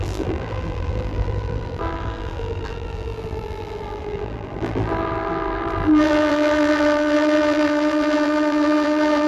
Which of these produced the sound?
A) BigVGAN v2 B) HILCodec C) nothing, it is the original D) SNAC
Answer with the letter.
A